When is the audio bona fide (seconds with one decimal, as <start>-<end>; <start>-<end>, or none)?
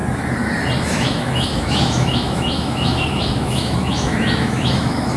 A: 0.0-0.8